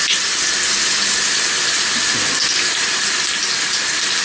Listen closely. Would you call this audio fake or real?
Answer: real